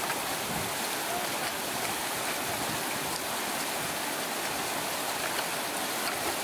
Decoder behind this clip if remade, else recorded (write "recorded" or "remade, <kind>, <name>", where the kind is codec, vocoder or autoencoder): recorded